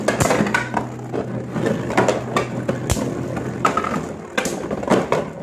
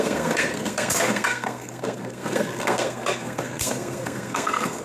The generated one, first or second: second